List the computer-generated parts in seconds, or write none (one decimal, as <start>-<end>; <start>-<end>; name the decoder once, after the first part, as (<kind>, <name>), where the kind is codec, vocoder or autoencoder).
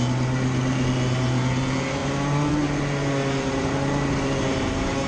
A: none